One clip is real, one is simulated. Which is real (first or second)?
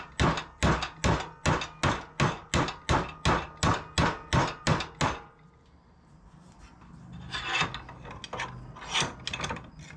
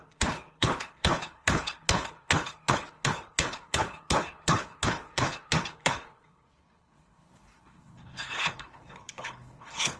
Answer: first